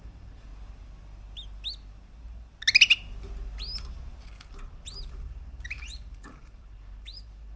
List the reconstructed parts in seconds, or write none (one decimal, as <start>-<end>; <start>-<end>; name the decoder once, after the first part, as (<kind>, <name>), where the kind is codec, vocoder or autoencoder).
0.0-0.5 (vocoder, BigVGAN v2); 5.1-7.6

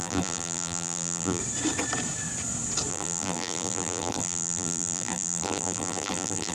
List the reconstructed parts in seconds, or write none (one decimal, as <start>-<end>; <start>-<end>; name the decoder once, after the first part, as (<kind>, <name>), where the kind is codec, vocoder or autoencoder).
0.0-1.4 (vocoder, BigVGAN v2); 2.9-6.5

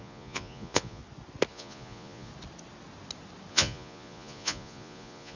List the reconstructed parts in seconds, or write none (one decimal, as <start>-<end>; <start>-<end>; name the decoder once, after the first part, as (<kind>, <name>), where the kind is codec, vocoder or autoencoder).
0.0-1.0 (vocoder, Vocos); 1.5-2.3; 3.5-5.4

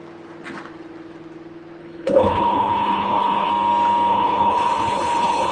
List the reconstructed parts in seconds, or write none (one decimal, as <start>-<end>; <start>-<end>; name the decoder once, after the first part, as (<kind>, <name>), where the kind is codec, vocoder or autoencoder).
1.8-3.5 (codec, HILCodec); 4.1-5.5

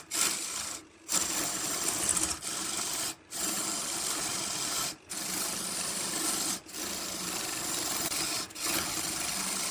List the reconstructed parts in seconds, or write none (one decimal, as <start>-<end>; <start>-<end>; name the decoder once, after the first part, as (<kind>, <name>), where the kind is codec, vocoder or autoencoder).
none

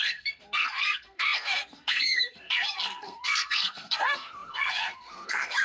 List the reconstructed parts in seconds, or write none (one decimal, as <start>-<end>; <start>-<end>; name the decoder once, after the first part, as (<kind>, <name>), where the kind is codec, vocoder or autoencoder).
0.0-5.6 (codec, SNAC)